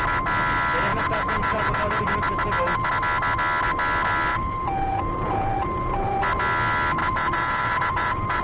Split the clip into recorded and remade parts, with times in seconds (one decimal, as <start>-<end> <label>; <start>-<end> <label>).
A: 0.0-0.9 recorded; 0.9-2.1 remade; 2.1-4.3 recorded; 4.3-6.2 remade; 6.2-7.0 recorded; 7.0-8.4 remade

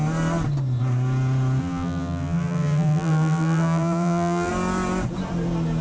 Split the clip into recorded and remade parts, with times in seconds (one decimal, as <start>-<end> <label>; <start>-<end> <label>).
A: 0.0-1.6 recorded; 1.6-4.5 remade; 4.5-5.8 recorded